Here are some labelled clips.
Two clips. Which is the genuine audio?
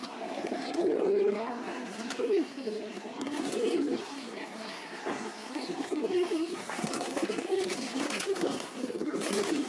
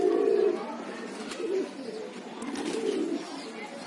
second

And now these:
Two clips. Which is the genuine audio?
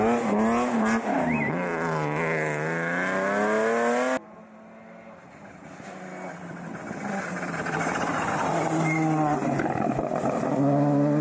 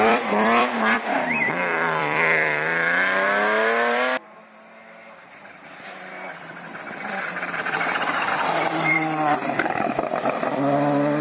first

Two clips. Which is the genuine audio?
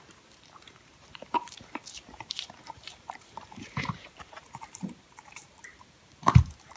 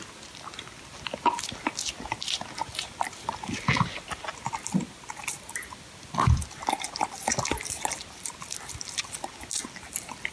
second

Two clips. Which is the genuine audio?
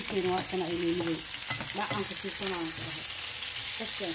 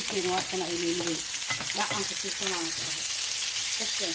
first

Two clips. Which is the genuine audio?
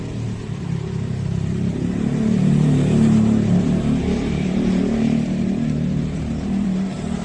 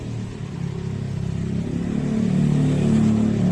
second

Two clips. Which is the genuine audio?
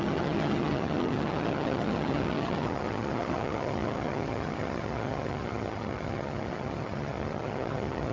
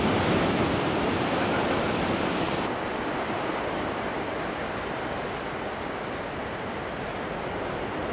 second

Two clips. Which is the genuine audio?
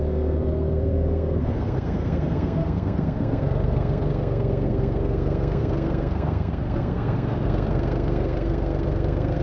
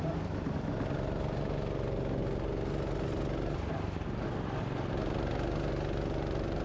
second